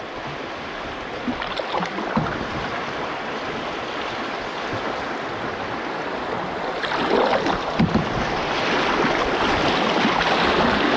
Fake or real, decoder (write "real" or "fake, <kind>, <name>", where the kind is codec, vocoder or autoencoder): real